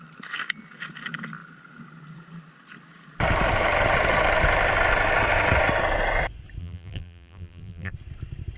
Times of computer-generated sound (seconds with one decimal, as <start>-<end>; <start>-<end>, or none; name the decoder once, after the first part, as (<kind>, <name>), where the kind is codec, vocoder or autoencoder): 6.6-7.9 (vocoder, BigVGAN v2)